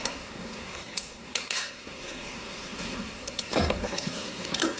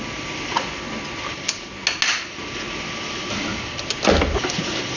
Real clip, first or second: second